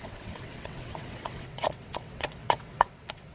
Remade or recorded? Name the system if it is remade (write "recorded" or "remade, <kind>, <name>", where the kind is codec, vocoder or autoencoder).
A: remade, vocoder, WaveNeXt